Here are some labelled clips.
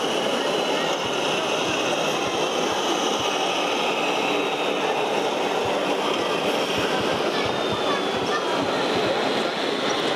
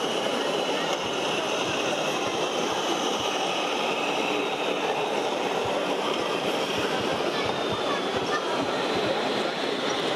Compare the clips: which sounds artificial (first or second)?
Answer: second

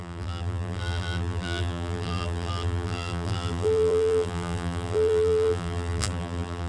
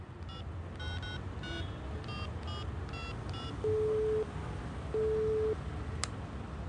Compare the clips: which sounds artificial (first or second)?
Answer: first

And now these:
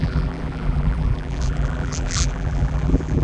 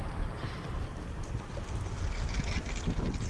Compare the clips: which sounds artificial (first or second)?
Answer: first